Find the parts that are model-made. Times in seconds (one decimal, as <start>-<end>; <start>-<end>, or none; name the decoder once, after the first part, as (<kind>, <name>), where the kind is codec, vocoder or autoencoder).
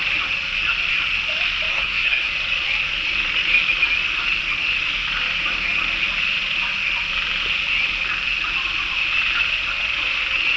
1.7-2.3 (codec, SNAC)